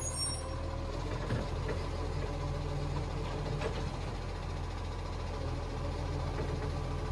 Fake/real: real